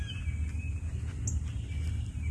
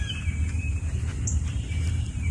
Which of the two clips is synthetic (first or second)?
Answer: second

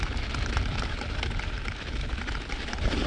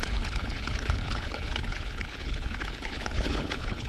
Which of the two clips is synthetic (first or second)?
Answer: second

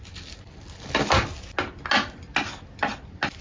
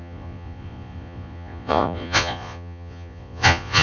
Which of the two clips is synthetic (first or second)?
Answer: second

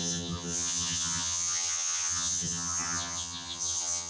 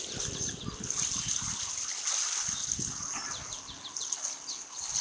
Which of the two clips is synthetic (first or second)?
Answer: first